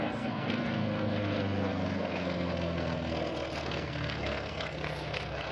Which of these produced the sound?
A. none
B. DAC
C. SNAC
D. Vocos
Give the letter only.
C